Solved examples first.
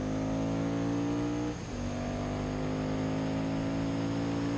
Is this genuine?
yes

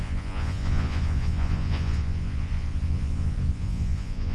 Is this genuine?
no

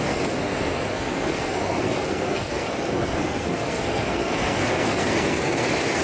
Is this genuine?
no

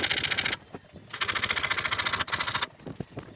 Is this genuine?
yes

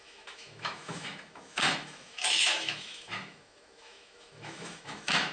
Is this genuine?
no